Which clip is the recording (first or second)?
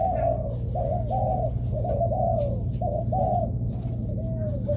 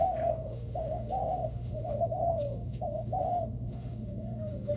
first